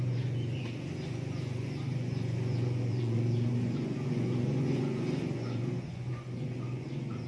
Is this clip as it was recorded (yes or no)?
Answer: no